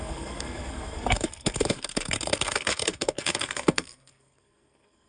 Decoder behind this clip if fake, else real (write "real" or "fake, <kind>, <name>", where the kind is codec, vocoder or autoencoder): fake, codec, SNAC